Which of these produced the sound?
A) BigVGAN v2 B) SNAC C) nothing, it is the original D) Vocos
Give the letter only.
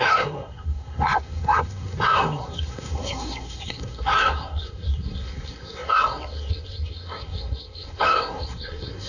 B